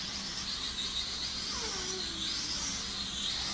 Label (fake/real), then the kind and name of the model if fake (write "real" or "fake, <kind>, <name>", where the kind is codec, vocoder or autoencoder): real